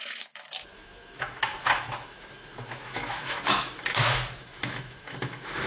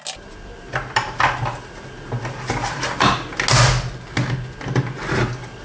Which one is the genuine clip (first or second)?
second